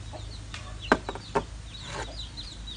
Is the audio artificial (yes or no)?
no